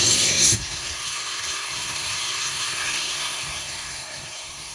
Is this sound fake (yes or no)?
yes